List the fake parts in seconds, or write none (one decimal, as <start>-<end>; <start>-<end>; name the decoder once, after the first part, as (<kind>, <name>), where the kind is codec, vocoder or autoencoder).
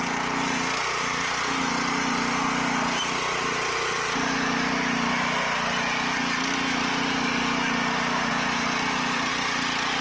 8.3-9.3 (vocoder, BigVGAN v2)